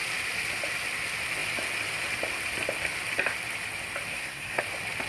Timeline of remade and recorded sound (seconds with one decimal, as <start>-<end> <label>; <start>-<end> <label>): 0.0-4.1 recorded; 4.1-4.6 remade; 4.6-5.1 recorded